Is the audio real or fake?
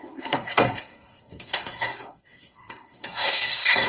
fake